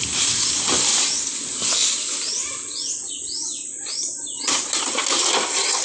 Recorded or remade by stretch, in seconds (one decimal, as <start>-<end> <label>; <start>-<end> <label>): 0.0-0.9 recorded; 0.9-1.4 remade; 1.4-1.8 recorded; 1.8-5.3 remade; 5.3-5.8 recorded